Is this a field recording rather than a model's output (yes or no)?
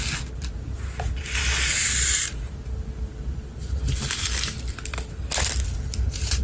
yes